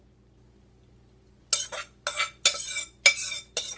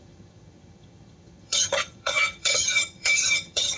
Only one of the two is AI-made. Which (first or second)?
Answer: second